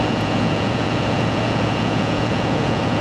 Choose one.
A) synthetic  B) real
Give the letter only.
A